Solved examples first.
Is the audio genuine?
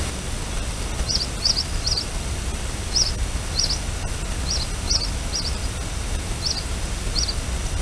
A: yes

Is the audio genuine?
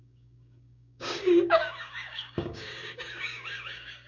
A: no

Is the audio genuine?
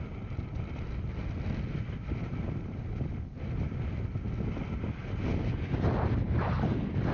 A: yes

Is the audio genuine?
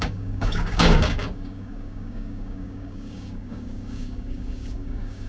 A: no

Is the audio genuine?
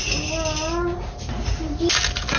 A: yes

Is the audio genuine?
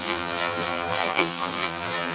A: no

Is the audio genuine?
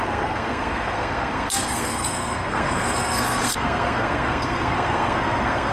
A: no